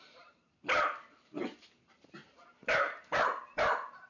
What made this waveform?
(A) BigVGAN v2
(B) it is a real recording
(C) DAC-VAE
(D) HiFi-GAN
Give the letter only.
A